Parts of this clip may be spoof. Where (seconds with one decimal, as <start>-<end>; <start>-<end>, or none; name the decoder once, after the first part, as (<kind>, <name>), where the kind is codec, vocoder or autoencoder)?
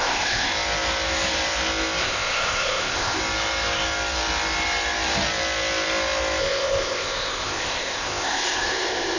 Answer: 0.0-0.5 (codec, ZipCodec); 2.0-3.2; 6.4-9.2